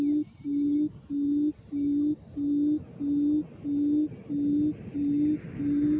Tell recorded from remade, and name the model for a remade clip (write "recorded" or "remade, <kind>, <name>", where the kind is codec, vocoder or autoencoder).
recorded